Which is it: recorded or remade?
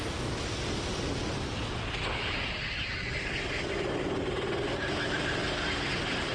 recorded